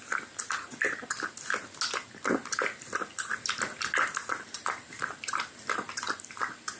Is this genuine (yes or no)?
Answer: yes